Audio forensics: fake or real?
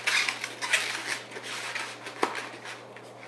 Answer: real